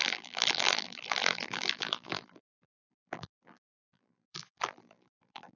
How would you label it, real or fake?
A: fake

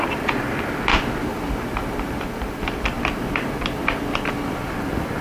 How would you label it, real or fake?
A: fake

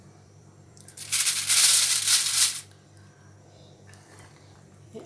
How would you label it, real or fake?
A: fake